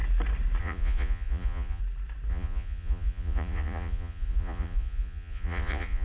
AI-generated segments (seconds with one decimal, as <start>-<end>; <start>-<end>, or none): 0.6-1.8; 2.3-6.0